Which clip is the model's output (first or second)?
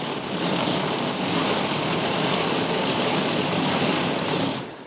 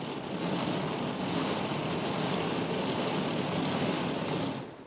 first